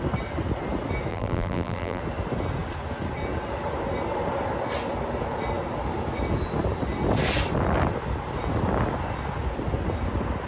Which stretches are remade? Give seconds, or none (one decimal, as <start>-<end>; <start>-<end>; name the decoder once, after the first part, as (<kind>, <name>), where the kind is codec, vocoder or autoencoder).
1.1-2.0 (vocoder, BigVGAN v2)